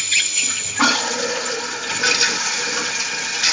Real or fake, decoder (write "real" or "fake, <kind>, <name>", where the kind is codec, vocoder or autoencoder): real